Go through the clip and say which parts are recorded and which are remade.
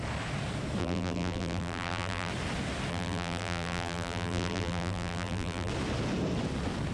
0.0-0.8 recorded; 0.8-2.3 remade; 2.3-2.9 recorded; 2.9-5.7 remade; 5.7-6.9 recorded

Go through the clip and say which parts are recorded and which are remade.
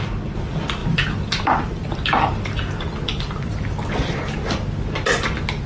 0.0-0.8 recorded; 0.8-4.2 remade; 4.2-5.7 recorded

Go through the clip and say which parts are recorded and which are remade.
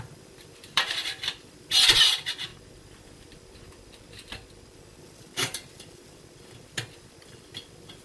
0.0-2.5 remade; 2.5-5.0 recorded; 5.0-8.0 remade